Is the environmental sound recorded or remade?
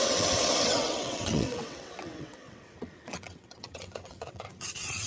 remade